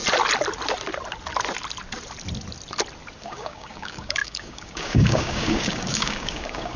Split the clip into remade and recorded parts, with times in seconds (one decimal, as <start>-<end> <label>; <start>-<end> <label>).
0.0-3.2 recorded; 3.2-6.8 remade